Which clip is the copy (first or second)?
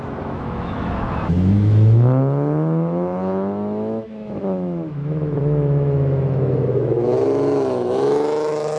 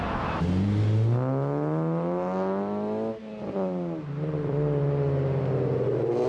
first